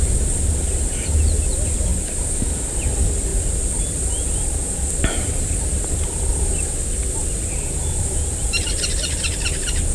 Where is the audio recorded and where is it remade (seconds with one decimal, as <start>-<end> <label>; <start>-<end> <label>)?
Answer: 0.0-1.9 remade; 1.9-2.9 recorded; 2.9-3.3 remade; 3.3-5.4 recorded; 5.4-9.9 remade